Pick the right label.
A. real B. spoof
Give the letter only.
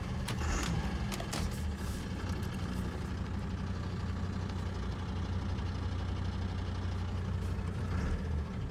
A